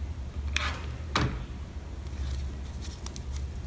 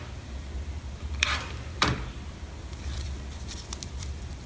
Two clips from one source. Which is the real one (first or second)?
first